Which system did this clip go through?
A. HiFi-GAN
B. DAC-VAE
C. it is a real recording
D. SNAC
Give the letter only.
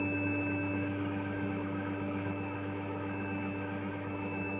B